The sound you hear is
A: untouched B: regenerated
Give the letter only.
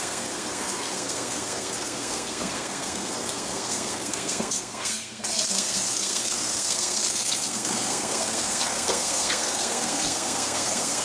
B